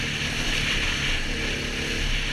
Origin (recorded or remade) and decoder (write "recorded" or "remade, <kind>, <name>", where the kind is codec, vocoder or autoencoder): recorded